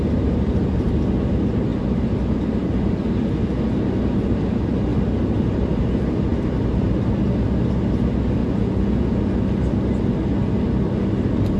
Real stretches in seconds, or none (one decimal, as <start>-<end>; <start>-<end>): 0.0-8.4; 9.3-11.6